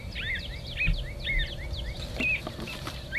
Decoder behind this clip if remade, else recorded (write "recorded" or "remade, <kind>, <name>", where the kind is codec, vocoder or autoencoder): recorded